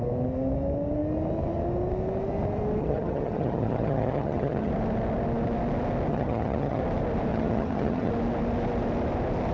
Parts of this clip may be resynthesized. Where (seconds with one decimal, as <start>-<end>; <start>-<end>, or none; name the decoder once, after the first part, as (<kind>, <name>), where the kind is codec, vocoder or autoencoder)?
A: 2.8-4.7 (vocoder, HiFi-GAN); 6.1-6.8; 7.3-8.1

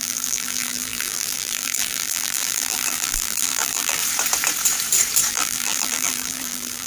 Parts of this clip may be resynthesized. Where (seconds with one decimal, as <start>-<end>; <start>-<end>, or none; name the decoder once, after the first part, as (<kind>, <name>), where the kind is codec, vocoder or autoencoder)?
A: 0.0-4.0 (vocoder, BigVGAN v2); 5.3-6.9

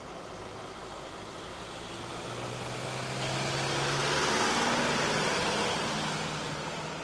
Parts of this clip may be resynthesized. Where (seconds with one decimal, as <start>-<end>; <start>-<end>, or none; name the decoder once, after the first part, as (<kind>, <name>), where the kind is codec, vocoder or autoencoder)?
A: none

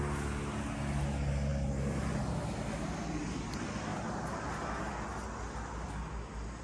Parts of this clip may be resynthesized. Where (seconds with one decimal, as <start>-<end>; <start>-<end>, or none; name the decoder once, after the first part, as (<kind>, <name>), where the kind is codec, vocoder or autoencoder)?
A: none

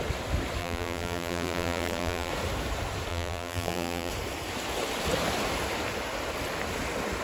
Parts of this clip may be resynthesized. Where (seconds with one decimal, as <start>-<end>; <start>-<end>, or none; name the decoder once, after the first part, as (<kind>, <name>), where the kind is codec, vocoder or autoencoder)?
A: 0.6-2.3 (vocoder, BigVGAN v2); 3.1-4.1

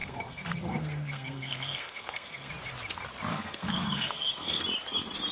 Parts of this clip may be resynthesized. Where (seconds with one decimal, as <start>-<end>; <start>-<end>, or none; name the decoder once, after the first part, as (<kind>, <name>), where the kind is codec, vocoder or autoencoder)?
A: 0.0-2.5 (codec, SNAC); 3.3-4.6